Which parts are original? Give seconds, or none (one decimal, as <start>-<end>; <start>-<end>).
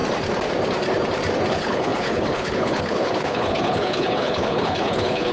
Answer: 0.0-1.5